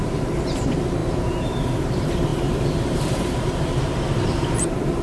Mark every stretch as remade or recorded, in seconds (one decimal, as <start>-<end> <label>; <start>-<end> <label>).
0.0-5.0 remade